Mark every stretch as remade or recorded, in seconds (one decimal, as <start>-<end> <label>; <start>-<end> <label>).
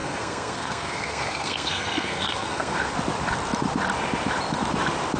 0.0-2.9 remade; 2.9-5.2 recorded